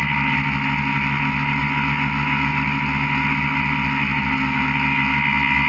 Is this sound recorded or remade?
recorded